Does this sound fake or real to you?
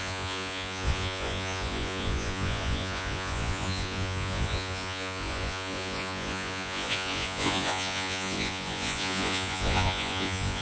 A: fake